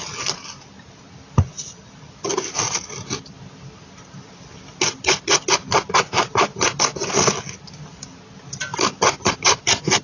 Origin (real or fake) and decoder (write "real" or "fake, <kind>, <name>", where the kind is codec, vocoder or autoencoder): real